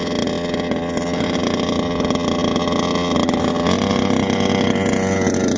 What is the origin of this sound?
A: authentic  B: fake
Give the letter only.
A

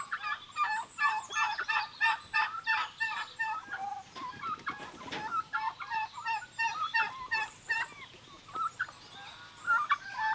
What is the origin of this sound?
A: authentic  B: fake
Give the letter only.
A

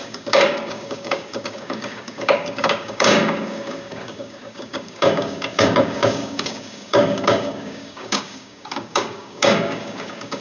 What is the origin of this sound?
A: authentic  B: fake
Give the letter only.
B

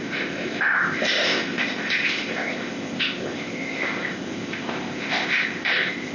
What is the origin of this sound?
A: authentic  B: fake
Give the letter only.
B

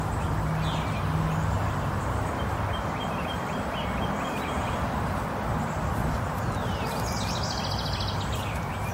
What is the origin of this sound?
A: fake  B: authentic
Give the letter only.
B